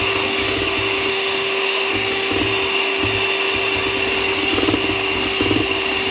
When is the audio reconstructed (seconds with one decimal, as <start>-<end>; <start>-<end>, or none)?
1.1-1.9